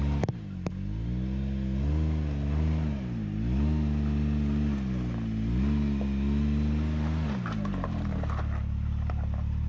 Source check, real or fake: real